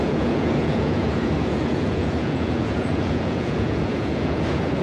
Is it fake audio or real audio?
fake